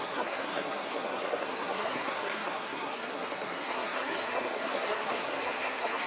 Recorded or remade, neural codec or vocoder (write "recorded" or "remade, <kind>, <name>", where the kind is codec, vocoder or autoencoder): remade, codec, SNAC